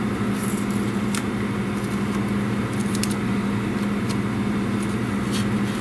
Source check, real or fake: real